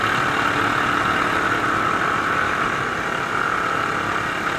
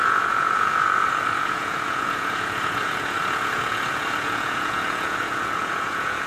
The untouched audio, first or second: first